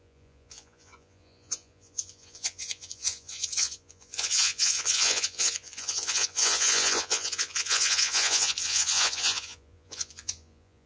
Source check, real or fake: fake